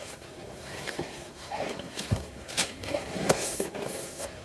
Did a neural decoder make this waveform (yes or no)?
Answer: yes